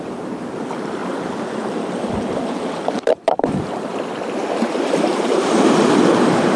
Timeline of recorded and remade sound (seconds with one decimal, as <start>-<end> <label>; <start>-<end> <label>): 0.0-3.9 remade; 3.9-4.9 recorded; 4.9-6.6 remade